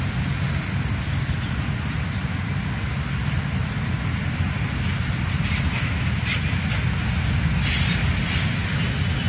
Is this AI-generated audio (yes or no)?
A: no